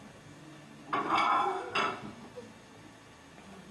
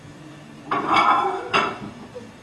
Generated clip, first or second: second